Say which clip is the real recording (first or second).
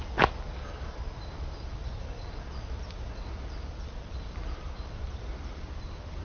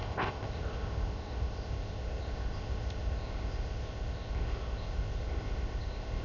first